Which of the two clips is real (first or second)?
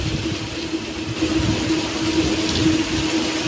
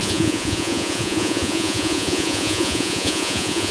first